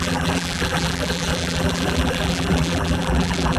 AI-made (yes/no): yes